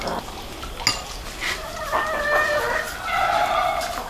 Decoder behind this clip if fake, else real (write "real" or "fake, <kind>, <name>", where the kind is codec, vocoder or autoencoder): real